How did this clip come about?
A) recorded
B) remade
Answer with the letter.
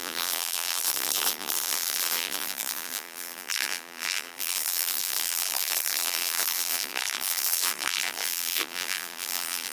B